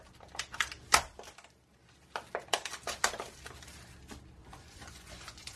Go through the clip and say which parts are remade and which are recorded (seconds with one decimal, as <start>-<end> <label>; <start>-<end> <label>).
0.0-4.4 recorded; 4.4-5.6 remade